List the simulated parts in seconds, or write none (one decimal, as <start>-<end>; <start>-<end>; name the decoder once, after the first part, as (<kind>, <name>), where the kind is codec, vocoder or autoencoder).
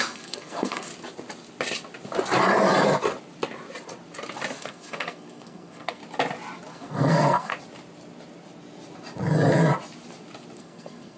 0.0-0.9 (codec, SNAC); 4.6-6.0; 6.7-7.5; 10.6-11.2